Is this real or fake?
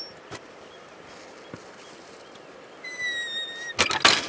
real